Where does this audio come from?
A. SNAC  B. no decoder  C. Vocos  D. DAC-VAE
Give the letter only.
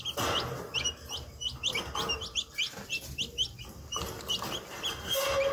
B